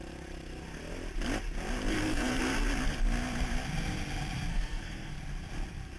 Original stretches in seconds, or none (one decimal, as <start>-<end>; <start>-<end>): 0.0-1.9; 2.4-4.5; 5.1-6.0